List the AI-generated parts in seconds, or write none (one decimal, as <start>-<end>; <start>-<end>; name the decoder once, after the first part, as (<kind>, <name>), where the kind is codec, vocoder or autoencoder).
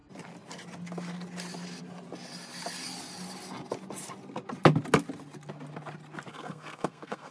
6.3-7.3 (codec, SNAC)